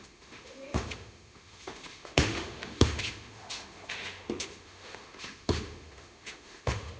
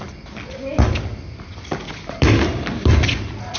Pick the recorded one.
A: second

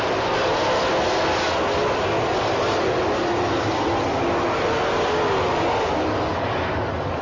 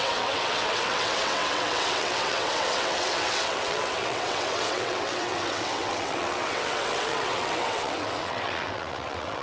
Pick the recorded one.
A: first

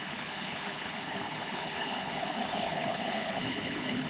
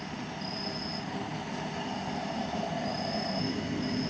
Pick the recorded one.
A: second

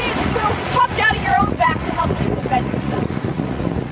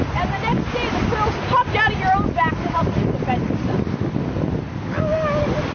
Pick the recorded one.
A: second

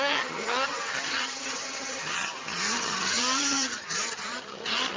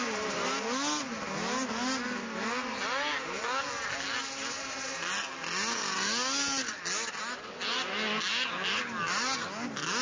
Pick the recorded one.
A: second